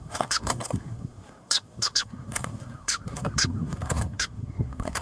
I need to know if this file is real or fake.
fake